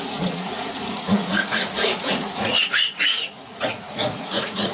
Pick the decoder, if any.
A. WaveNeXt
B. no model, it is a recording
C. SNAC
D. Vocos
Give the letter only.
D